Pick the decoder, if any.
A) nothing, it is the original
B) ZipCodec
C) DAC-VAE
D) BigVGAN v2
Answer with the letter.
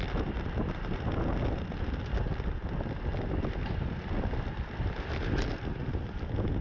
A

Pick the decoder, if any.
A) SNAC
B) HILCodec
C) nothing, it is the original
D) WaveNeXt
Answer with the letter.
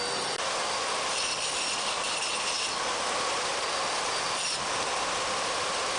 C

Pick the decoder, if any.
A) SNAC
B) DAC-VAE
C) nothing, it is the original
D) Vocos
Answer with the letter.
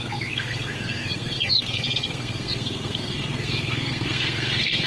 A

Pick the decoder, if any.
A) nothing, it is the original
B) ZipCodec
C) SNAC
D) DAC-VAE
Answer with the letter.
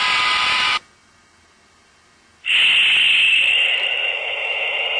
A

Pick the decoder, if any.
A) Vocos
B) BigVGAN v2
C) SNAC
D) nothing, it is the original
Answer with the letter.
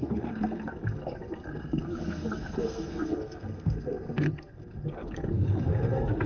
C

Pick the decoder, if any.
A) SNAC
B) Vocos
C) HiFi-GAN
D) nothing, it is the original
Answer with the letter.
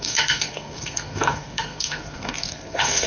A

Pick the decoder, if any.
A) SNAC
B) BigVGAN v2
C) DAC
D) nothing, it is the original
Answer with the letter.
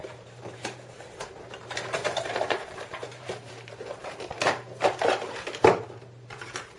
B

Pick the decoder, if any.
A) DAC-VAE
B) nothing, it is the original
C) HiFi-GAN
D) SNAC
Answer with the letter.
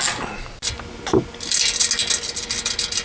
B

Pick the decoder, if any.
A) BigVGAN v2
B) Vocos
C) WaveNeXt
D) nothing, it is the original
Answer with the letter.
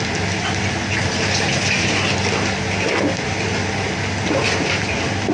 D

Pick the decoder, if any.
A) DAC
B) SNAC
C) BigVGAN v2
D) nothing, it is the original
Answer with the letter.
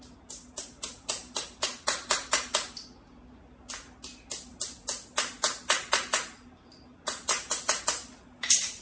D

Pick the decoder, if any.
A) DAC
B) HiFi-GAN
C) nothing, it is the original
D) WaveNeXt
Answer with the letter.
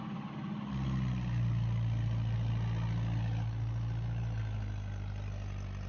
C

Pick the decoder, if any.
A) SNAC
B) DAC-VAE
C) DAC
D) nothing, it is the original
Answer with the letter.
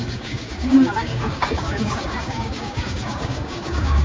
C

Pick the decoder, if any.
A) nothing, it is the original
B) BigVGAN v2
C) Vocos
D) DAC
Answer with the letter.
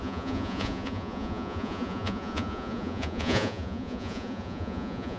C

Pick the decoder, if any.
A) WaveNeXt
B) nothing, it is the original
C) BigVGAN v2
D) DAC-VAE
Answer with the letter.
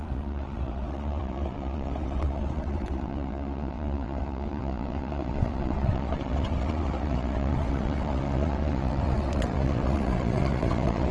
A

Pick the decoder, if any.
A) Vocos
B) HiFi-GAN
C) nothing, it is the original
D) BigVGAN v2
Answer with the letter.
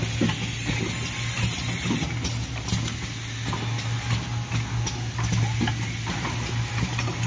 C